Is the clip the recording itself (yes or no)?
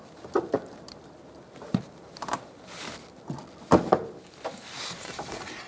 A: no